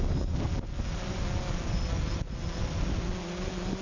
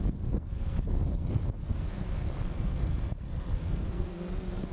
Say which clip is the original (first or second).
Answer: first